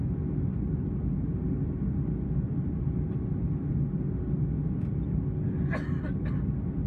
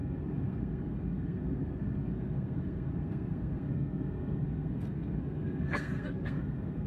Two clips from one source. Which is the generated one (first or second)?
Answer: second